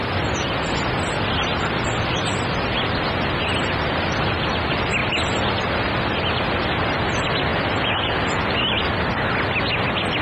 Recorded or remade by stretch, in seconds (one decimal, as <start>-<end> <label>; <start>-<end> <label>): 0.0-7.5 recorded; 7.5-8.5 remade; 8.5-10.2 recorded